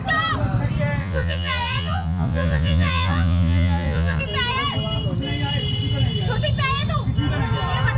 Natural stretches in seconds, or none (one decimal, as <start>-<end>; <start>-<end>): 0.0-1.0; 4.2-8.0